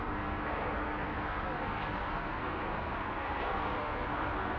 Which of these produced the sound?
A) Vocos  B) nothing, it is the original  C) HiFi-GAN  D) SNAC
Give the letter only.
D